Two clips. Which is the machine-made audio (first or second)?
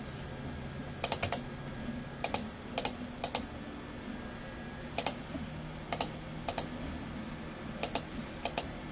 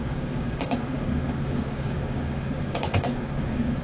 second